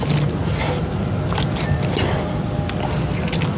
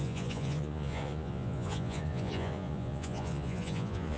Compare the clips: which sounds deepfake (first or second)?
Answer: second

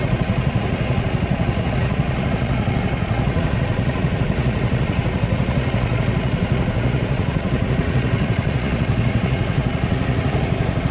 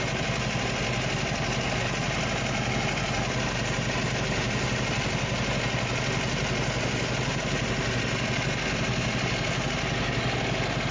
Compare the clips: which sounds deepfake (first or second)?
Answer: first